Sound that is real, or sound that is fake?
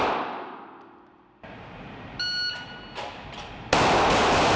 real